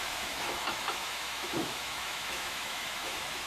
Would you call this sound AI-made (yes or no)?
yes